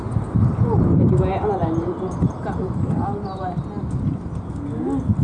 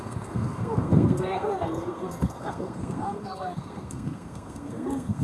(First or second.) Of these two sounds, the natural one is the first